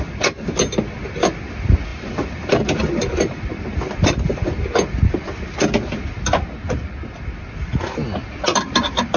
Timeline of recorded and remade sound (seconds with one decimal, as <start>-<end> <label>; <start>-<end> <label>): 0.0-9.2 recorded